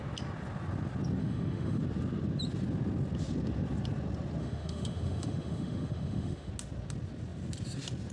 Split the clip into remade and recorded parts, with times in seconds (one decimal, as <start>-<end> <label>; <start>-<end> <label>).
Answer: 0.0-1.2 recorded; 1.2-1.8 remade; 1.8-4.4 recorded; 4.4-6.5 remade; 6.5-8.1 recorded

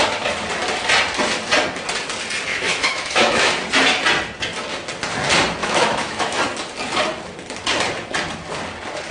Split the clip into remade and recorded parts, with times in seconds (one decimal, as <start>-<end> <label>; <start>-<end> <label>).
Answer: 0.0-2.5 recorded; 2.5-3.5 remade; 3.5-5.6 recorded; 5.6-6.4 remade; 6.4-9.1 recorded

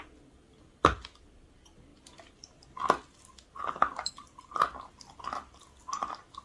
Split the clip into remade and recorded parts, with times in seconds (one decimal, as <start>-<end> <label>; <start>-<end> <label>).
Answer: 0.0-6.4 recorded